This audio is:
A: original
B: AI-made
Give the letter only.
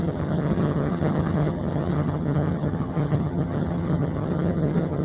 B